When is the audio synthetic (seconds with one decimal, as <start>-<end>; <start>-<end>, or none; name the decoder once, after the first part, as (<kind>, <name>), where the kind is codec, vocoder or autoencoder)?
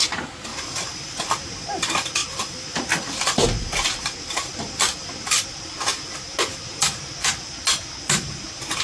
2.2-5.6 (vocoder, BigVGAN v2); 6.5-7.0